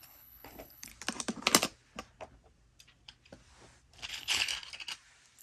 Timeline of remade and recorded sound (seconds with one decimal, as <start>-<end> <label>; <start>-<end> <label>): 0.0-0.9 remade; 0.9-4.1 recorded; 4.1-4.5 remade; 4.5-5.4 recorded